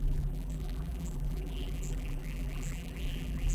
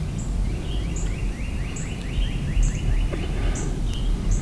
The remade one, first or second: first